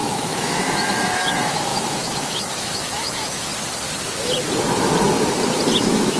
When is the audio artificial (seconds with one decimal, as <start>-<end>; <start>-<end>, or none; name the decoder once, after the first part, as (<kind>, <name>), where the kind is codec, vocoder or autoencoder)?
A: 0.0-3.5 (autoencoder, DAC-VAE); 5.8-6.2